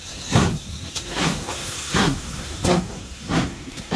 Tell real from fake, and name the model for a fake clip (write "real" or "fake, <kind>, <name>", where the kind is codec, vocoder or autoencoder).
fake, codec, SNAC